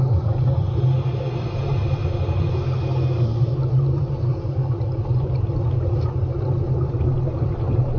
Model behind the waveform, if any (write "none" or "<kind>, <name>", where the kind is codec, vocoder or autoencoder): none